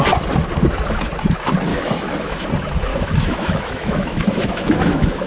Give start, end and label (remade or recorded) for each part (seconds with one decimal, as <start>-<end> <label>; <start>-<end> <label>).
0.0-1.7 recorded; 1.7-2.5 remade; 2.5-2.9 recorded; 2.9-5.3 remade